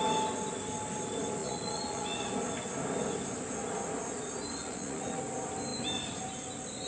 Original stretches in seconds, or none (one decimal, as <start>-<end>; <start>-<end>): 0.0-1.4; 2.3-4.6; 5.2-6.9